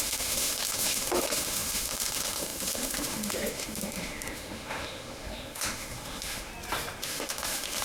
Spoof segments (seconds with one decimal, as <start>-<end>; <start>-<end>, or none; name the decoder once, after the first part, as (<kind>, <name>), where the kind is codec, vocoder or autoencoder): 0.0-6.5 (autoencoder, DAC-VAE); 7.0-7.8